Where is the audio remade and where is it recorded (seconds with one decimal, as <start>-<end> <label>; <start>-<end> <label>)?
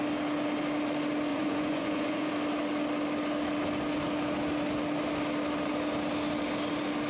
0.0-1.3 recorded; 1.3-2.3 remade; 2.3-7.1 recorded